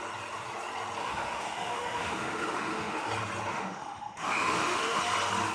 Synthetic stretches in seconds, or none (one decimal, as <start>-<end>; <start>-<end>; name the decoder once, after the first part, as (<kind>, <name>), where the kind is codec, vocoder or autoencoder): 1.0-3.1 (autoencoder, DAC-VAE); 3.5-5.0